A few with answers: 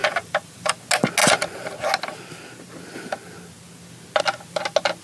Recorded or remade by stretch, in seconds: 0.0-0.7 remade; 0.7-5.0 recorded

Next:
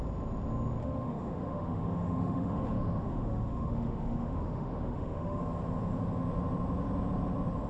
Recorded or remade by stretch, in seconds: 0.0-0.8 recorded; 0.8-5.4 remade; 5.4-7.7 recorded

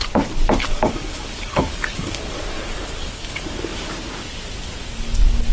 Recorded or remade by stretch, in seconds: 0.0-0.6 recorded; 0.6-3.9 remade; 3.9-5.5 recorded

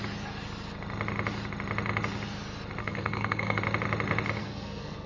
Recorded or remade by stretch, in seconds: 0.0-2.8 recorded; 2.8-3.6 remade; 3.6-4.4 recorded; 4.4-5.1 remade

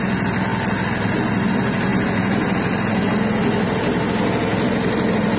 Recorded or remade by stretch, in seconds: 0.0-5.4 recorded

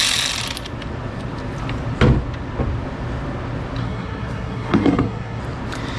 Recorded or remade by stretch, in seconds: 0.0-3.8 recorded; 3.8-5.4 remade; 5.4-6.0 recorded

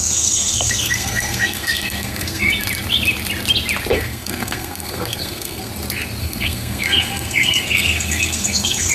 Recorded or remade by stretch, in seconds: 0.0-2.5 remade; 2.5-3.9 recorded; 3.9-5.7 remade; 5.7-6.2 recorded; 6.2-8.9 remade

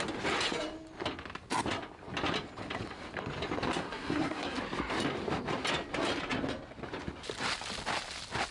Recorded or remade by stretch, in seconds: 0.0-3.7 recorded; 3.7-4.6 remade; 4.6-8.5 recorded